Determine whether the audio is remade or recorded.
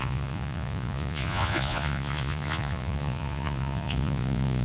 remade